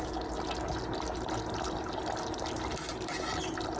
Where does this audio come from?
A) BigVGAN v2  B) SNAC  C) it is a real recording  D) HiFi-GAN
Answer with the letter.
C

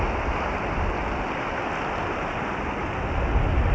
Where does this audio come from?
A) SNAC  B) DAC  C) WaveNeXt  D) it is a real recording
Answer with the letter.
D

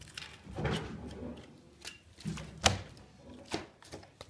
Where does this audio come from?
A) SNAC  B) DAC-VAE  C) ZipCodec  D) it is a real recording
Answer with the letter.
D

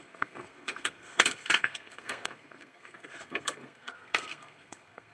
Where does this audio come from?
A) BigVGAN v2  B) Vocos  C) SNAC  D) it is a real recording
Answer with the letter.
C